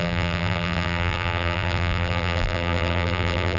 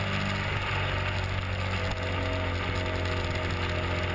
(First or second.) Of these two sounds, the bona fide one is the second